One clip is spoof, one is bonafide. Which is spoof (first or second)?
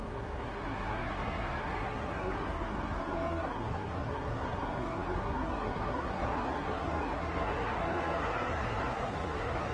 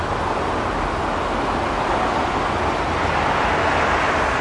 first